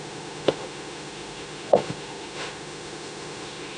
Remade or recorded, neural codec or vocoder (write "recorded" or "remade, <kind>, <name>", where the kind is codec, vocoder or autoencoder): remade, autoencoder, DAC-VAE